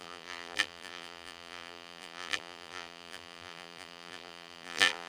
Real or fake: fake